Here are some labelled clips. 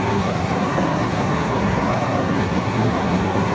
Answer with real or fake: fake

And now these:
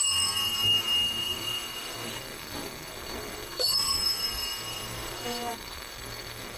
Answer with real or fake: fake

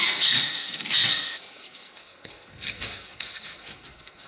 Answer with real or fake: fake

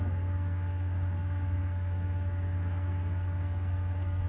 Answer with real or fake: fake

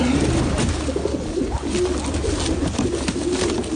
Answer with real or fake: real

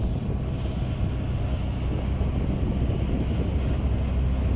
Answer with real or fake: real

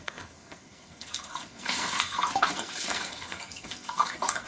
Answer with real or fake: fake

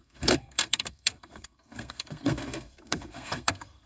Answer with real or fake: fake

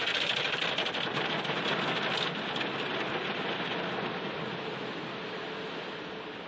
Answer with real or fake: real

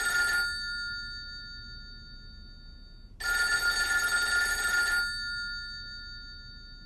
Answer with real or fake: real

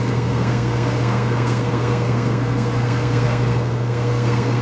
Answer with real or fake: fake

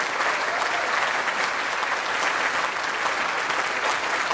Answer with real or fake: real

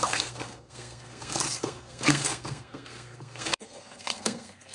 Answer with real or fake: fake